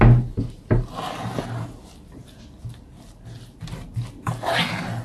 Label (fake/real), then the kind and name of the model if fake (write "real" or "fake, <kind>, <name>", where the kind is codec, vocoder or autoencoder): real